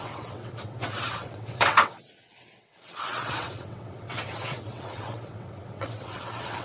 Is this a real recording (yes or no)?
no